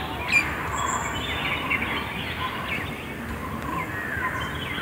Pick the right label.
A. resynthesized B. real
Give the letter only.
B